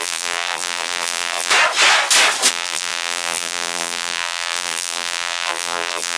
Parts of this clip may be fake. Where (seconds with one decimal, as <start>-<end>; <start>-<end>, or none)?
0.0-1.5; 2.5-6.2

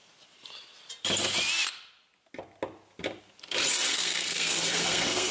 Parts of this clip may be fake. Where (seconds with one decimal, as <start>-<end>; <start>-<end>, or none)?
3.9-5.3

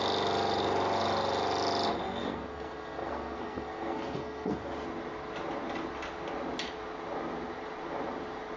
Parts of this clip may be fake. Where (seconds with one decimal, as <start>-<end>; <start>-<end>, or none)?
2.2-4.7